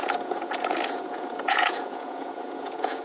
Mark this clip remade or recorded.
remade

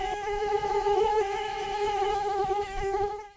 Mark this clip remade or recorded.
remade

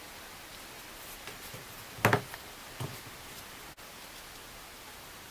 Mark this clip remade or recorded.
recorded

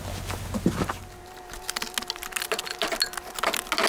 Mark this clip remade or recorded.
recorded